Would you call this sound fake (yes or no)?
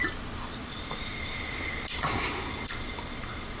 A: no